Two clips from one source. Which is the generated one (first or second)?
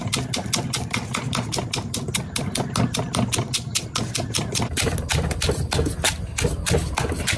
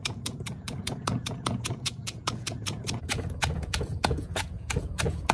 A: second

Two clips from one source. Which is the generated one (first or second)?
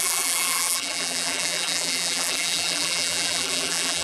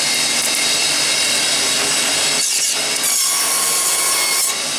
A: first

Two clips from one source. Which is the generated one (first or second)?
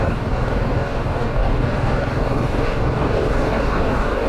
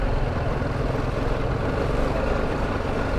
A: first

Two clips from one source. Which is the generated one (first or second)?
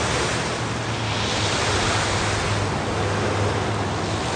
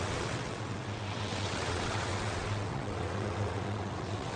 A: second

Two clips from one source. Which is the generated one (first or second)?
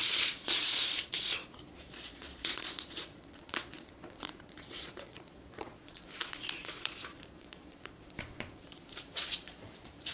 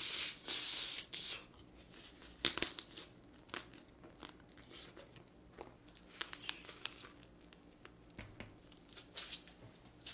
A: first